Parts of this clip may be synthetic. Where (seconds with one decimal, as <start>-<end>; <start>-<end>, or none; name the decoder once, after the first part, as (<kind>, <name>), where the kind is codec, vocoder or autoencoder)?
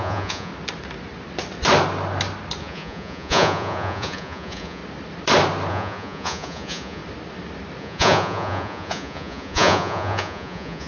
0.0-0.5 (vocoder, Vocos); 2.6-4.8; 5.7-7.0; 7.8-10.9